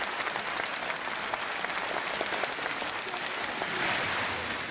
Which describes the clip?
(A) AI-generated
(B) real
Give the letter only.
B